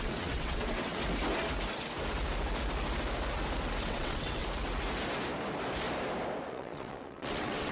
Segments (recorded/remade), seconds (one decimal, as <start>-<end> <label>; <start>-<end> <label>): 0.0-1.0 remade; 1.0-3.8 recorded; 3.8-4.4 remade; 4.4-6.5 recorded; 6.5-7.7 remade